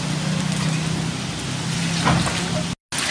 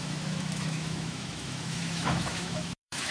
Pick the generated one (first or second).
second